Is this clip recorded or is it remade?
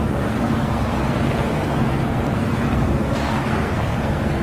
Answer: remade